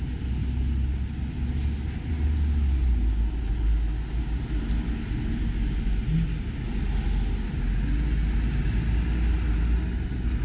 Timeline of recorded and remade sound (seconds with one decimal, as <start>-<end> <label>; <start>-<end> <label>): 0.0-10.4 recorded